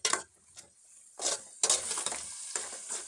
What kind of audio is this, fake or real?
real